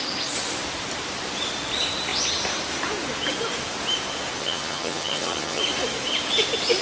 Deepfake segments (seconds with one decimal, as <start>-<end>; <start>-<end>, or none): 4.4-5.6